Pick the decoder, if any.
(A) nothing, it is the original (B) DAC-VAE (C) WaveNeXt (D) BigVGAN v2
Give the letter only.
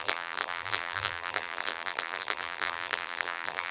D